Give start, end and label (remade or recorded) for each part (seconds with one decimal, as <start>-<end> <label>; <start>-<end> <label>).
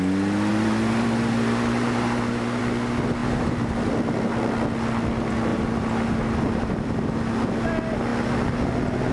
0.0-0.5 recorded; 0.5-2.6 remade; 2.6-3.2 recorded; 3.2-3.9 remade; 3.9-5.5 recorded; 5.5-6.2 remade; 6.2-9.1 recorded